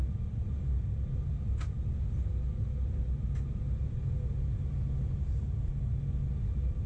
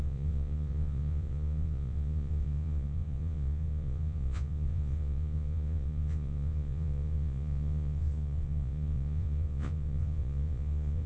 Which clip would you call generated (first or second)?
second